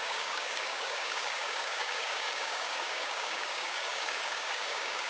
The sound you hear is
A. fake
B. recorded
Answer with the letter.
A